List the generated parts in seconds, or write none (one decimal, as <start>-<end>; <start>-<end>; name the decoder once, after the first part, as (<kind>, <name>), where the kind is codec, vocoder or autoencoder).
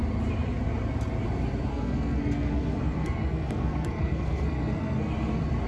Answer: 1.7-5.1 (codec, SNAC)